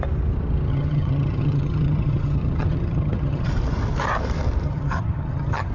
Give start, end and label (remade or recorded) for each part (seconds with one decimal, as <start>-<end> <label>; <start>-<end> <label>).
0.0-0.7 recorded; 0.7-3.5 remade; 3.5-4.6 recorded; 4.6-5.7 remade